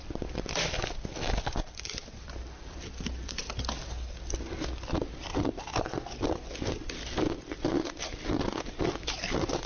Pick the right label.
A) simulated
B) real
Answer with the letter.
A